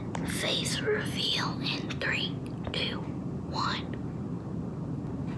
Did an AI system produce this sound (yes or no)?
no